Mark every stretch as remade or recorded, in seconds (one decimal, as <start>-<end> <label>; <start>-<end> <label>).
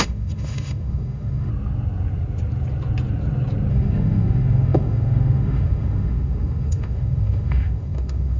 0.0-1.5 remade; 1.5-3.7 recorded; 3.7-8.4 remade